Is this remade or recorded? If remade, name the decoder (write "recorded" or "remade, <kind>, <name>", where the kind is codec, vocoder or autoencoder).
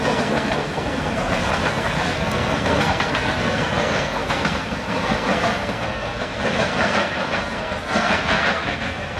remade, codec, SNAC